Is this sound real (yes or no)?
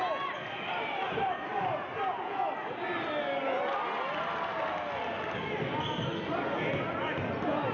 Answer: yes